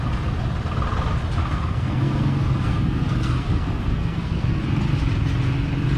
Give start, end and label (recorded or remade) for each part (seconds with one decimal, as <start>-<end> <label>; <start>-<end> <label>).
0.0-1.4 recorded; 1.4-4.6 remade; 4.6-6.0 recorded